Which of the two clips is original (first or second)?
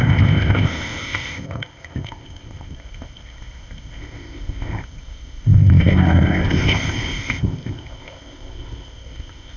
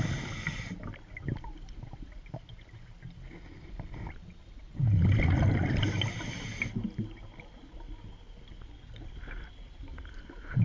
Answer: second